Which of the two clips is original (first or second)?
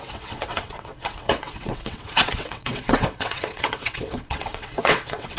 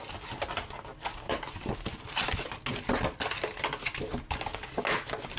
second